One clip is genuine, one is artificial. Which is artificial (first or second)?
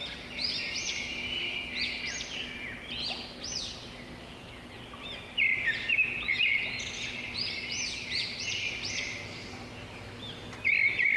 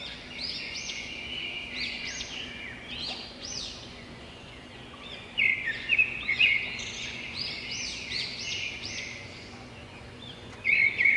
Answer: second